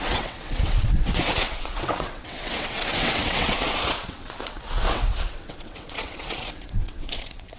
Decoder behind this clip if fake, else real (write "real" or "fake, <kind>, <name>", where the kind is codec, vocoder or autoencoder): fake, vocoder, WaveNeXt